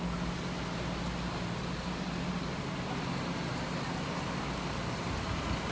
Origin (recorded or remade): recorded